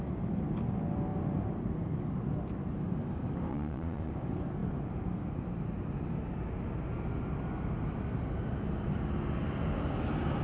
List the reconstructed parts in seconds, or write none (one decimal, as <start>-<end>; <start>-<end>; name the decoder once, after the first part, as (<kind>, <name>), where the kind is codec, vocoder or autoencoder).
3.5-4.1 (vocoder, Vocos)